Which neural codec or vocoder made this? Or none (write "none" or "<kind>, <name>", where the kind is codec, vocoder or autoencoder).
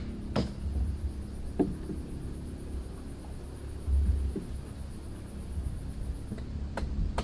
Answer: none